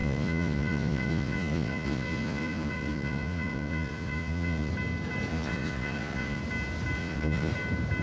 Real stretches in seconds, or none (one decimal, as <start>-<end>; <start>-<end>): 4.7-5.3; 6.4-7.0; 7.5-8.0